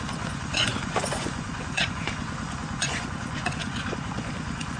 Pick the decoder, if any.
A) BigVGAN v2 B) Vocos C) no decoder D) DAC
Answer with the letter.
B